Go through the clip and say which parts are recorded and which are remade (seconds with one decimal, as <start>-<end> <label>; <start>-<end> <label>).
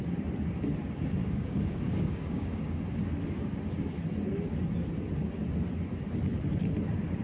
0.0-1.2 recorded; 1.2-2.8 remade; 2.8-7.2 recorded